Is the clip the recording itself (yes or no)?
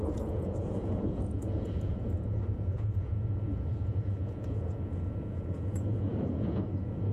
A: no